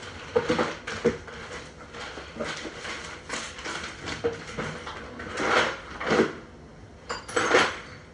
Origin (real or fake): real